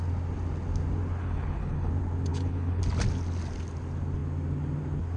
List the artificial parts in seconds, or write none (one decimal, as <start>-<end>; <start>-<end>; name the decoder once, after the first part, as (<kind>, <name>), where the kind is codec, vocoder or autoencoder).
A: 1.2-1.9 (codec, HILCodec); 2.3-2.8